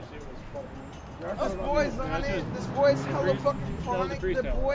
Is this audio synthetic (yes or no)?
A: no